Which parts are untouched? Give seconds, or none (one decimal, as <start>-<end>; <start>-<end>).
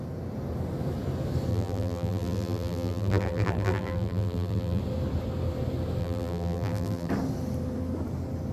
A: 0.0-1.5; 4.8-6.0; 7.1-8.5